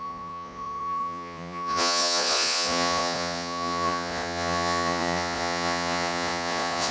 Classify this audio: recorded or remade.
remade